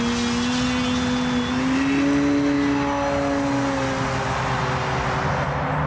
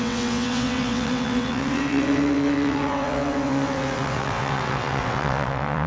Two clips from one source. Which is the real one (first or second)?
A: first